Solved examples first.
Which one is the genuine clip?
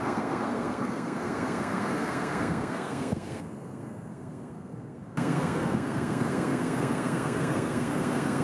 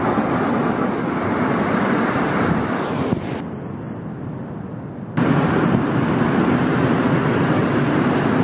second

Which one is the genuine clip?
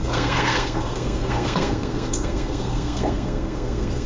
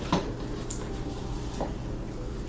second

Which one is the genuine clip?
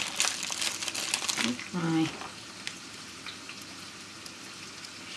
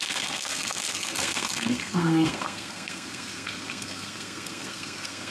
first